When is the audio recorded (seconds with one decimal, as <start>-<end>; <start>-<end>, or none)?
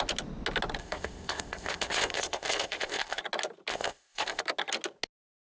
0.0-0.8; 3.2-3.7; 4.4-5.5